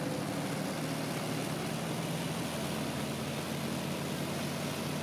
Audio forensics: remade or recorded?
recorded